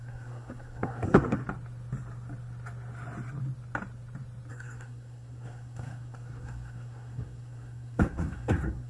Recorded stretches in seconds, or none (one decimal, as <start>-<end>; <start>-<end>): 1.4-4.5